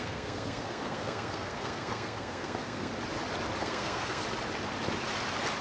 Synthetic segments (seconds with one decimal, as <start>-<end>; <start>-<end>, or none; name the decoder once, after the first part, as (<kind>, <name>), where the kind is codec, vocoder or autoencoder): 0.0-2.9 (codec, SNAC); 3.6-4.2